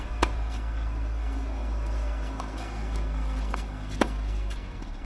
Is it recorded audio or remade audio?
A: remade